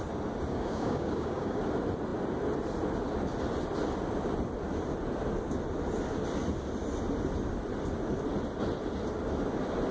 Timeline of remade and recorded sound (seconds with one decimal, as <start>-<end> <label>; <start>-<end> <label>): 0.0-0.5 recorded; 0.5-1.6 remade; 1.6-9.9 recorded